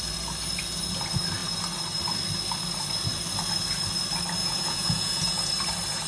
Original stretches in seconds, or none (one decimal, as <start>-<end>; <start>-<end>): 0.0-4.4; 5.5-6.1